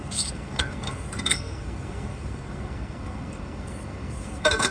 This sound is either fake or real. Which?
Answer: fake